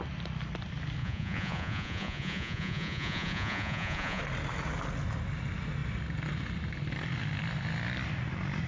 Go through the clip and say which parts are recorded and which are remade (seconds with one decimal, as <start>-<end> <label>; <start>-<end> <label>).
0.0-1.0 recorded; 1.0-4.2 remade; 4.2-8.7 recorded